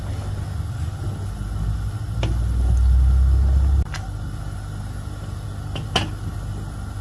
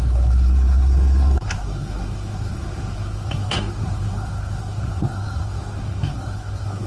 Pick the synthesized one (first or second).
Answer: second